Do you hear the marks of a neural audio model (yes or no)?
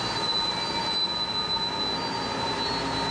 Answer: no